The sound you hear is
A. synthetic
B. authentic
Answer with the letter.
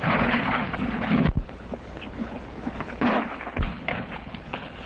A